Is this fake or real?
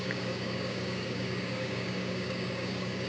fake